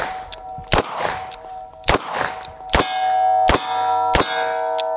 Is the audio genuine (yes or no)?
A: yes